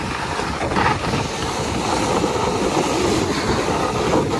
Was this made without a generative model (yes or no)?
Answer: yes